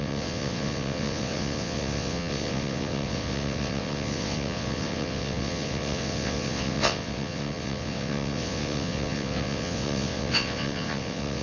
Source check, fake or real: fake